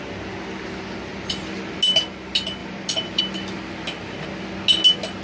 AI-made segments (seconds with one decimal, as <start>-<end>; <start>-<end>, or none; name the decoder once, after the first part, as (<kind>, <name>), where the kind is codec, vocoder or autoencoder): 1.1-1.8 (vocoder, BigVGAN v2); 2.6-3.2